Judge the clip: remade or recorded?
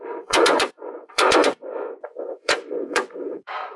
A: remade